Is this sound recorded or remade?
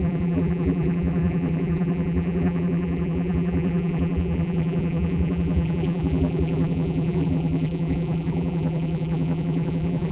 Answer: remade